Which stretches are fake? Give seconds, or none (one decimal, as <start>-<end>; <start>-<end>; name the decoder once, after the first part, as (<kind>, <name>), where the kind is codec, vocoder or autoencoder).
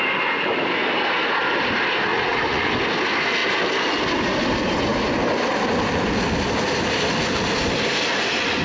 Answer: 2.1-2.7 (vocoder, Vocos)